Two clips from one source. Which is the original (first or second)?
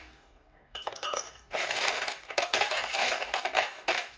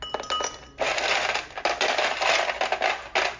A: second